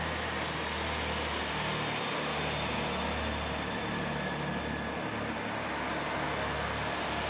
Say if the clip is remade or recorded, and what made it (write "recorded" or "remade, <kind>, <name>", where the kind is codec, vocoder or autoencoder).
recorded